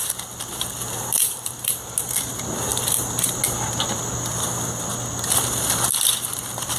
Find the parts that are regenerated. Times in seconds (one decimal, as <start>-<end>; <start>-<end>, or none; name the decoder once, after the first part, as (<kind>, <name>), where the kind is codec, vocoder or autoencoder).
0.0-1.7 (vocoder, BigVGAN v2); 2.7-3.4